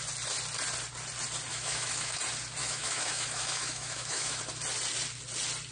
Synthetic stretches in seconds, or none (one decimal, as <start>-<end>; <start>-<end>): 1.5-2.2; 2.6-4.4